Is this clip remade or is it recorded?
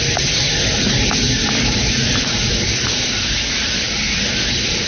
recorded